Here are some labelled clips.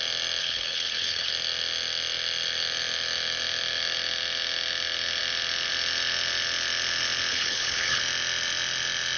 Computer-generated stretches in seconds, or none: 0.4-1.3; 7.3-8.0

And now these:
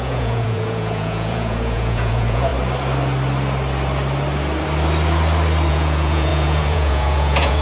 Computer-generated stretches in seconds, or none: 0.0-2.5; 5.7-7.6

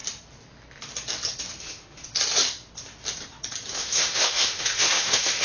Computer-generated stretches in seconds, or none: 1.6-2.0; 3.7-5.4

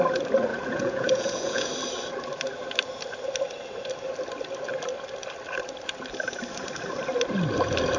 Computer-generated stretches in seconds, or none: 0.5-1.7

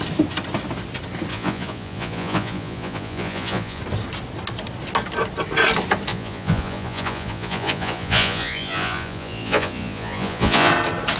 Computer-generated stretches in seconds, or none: 1.3-3.8; 6.1-10.7

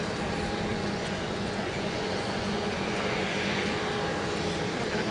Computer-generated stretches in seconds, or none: 0.7-3.8